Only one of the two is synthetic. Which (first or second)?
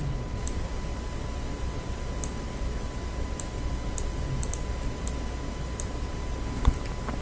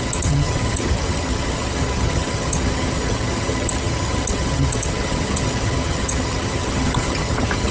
second